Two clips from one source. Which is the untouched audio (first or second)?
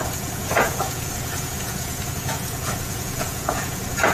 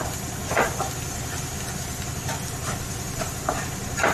second